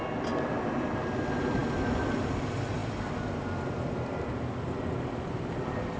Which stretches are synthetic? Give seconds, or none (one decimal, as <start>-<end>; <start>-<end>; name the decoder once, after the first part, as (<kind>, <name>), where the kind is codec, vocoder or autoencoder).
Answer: none